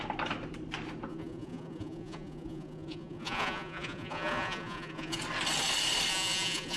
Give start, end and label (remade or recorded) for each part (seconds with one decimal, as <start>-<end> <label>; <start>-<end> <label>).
0.0-1.1 recorded; 1.1-5.2 remade; 5.2-6.1 recorded; 6.1-6.8 remade